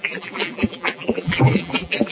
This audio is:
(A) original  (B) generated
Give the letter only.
B